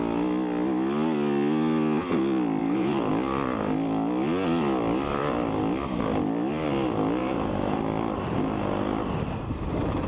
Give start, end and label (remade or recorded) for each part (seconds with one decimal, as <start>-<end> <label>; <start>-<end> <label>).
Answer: 0.0-2.6 recorded; 2.6-3.1 remade; 3.1-7.2 recorded; 7.2-7.8 remade; 7.8-10.1 recorded